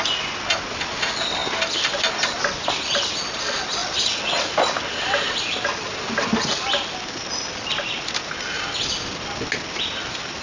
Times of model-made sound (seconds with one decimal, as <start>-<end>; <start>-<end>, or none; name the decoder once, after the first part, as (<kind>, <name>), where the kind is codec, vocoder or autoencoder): none